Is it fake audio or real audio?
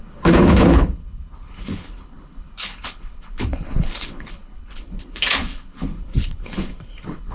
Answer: fake